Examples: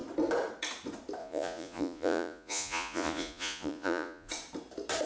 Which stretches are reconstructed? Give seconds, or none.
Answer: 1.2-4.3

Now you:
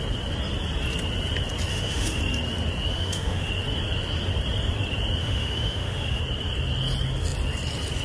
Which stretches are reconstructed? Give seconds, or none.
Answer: 1.7-2.2; 2.9-3.5; 5.2-6.2

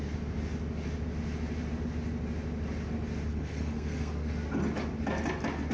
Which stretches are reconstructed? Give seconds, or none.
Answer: 3.3-4.3

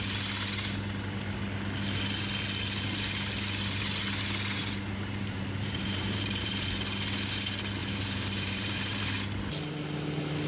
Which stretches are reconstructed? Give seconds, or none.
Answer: 4.6-6.7; 7.8-9.0

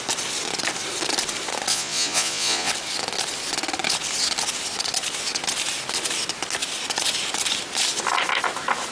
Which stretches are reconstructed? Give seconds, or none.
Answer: 1.7-2.7

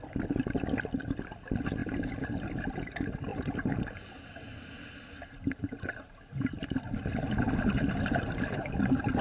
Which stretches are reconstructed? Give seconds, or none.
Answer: none